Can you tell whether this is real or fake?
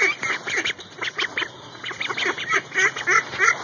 real